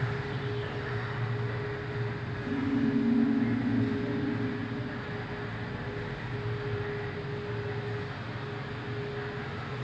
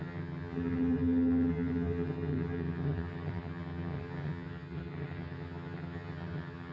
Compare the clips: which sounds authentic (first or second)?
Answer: first